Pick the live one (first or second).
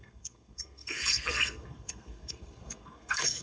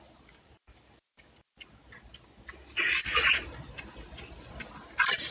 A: second